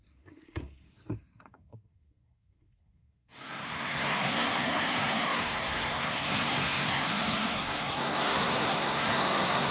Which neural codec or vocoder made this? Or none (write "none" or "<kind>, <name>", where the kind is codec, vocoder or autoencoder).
codec, SNAC